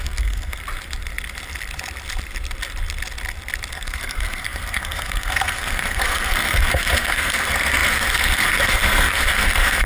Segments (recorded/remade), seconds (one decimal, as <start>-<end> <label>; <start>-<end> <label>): 0.0-0.6 remade; 0.6-3.7 recorded; 3.7-9.9 remade